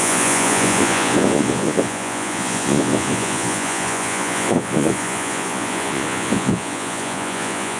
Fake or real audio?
fake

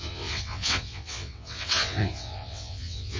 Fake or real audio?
fake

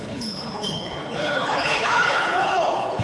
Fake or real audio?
fake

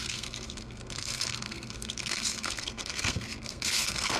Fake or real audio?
fake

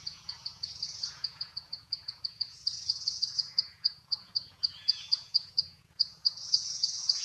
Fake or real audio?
fake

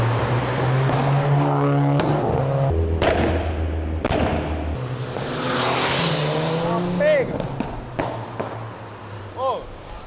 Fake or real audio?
real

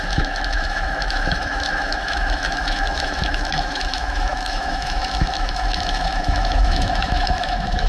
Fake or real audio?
fake